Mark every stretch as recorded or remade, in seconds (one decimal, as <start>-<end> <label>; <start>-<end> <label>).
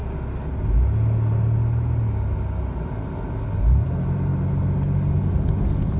0.0-3.6 recorded; 3.6-4.3 remade; 4.3-6.0 recorded